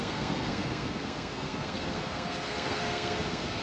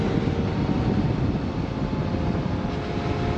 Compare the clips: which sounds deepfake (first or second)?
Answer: first